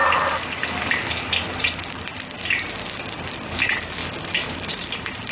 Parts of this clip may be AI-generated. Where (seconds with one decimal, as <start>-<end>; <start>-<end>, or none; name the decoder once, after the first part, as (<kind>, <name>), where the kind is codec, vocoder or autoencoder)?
none